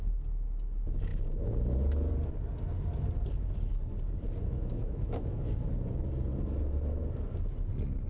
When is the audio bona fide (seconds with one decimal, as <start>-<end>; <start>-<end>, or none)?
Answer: 0.0-4.5; 5.7-8.1

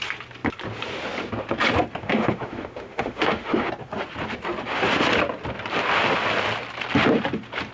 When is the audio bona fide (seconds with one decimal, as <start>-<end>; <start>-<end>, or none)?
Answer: 0.0-2.0; 3.7-7.7

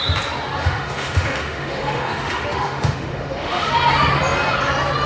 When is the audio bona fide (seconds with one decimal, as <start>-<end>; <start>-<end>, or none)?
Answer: 0.0-0.6; 3.7-5.1

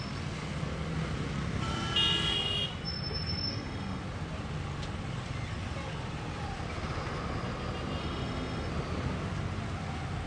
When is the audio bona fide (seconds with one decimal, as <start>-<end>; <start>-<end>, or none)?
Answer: 0.0-3.5; 4.0-8.0; 8.7-10.3

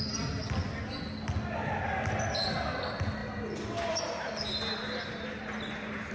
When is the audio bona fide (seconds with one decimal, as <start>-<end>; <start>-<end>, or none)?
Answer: 0.0-6.1

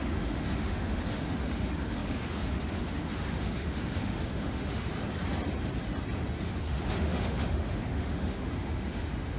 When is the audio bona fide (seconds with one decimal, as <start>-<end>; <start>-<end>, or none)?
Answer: 4.9-6.4

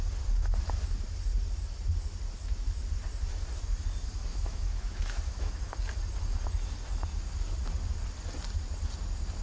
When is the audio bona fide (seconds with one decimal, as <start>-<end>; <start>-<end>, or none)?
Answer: 0.0-4.3; 5.5-9.4

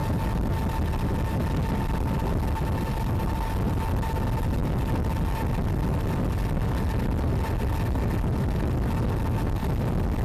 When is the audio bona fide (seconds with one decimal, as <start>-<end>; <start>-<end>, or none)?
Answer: 0.0-10.2